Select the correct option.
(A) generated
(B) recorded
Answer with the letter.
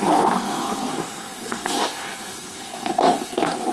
A